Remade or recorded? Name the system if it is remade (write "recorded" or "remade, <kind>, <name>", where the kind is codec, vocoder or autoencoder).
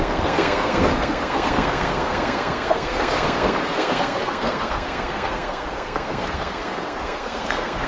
remade, codec, SNAC